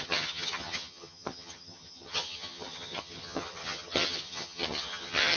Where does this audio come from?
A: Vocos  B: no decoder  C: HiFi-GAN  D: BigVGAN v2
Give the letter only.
C